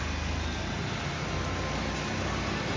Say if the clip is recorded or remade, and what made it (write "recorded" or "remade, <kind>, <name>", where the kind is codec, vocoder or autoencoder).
recorded